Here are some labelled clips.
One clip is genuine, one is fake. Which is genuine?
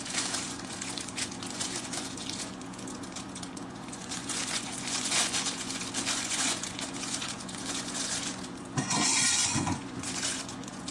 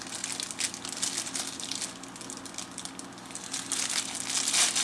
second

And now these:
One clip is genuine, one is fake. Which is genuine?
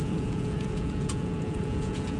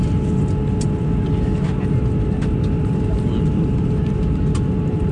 second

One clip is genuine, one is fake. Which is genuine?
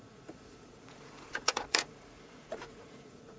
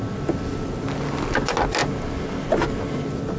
second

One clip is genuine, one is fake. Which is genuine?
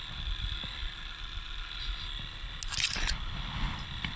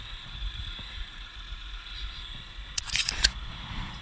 first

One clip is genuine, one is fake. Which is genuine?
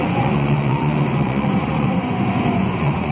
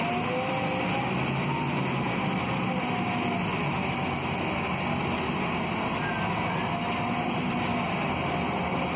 second